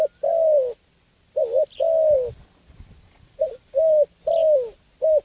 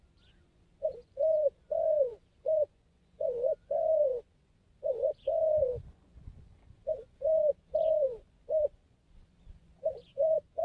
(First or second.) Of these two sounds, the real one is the first